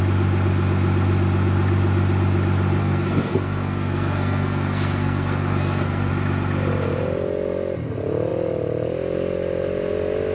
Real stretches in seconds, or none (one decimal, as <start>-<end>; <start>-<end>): 0.0-2.8; 6.1-10.3